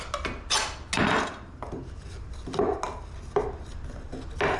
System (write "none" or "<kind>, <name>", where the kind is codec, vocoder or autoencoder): none